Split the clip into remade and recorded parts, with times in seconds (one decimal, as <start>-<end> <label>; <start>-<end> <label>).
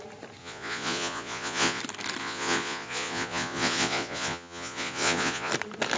0.0-0.4 recorded; 0.4-1.8 remade; 1.8-2.2 recorded; 2.2-5.5 remade; 5.5-6.0 recorded